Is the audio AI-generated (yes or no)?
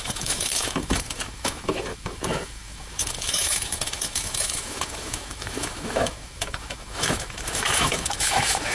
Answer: yes